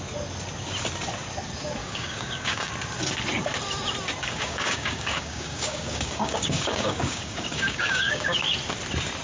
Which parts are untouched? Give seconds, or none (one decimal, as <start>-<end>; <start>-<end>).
0.0-1.8; 2.7-4.2; 8.4-9.2